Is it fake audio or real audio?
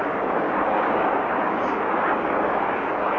fake